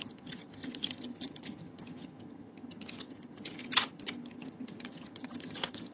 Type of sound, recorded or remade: remade